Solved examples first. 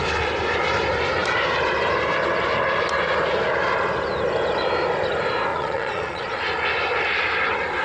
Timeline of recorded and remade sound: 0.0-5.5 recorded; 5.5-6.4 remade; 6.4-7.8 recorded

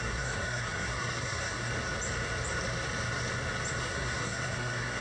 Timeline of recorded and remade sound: 0.0-1.7 remade; 1.7-3.8 recorded; 3.8-5.0 remade

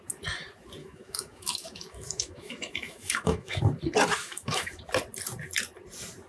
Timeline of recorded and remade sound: 0.0-0.8 recorded; 0.8-3.6 remade; 3.6-4.2 recorded; 4.2-4.8 remade; 4.8-6.3 recorded

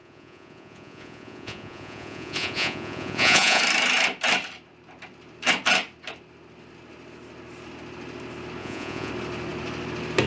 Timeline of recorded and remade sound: 0.0-3.6 remade; 3.6-8.6 recorded; 8.6-9.1 remade; 9.1-10.3 recorded